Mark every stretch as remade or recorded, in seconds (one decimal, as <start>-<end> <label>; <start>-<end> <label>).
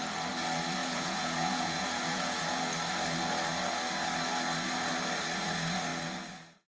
0.0-0.8 recorded; 0.8-2.6 remade; 2.6-6.7 recorded